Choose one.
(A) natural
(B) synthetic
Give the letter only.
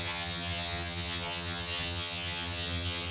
B